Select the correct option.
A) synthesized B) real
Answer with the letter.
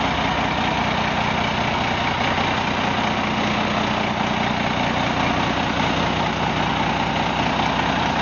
B